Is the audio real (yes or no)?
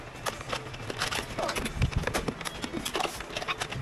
yes